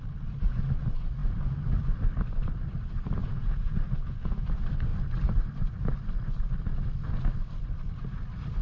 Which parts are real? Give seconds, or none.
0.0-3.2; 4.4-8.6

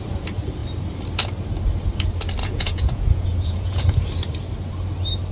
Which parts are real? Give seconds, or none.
0.0-2.4; 4.0-5.3